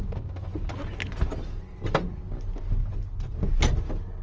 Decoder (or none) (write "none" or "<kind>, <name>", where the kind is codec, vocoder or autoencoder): none